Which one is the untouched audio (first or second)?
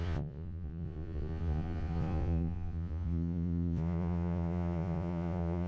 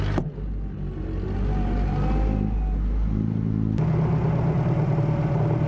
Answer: second